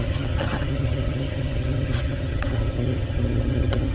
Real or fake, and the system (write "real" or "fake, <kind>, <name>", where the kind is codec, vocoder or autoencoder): fake, vocoder, HiFi-GAN